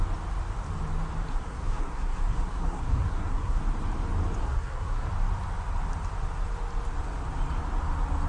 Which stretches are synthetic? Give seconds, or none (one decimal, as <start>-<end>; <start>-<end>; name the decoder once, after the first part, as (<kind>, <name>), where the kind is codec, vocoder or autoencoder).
1.3-3.6 (codec, SNAC); 4.4-5.1